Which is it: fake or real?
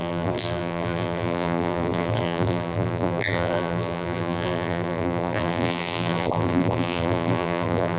fake